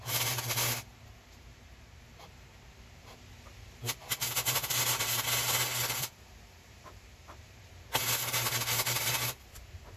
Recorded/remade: remade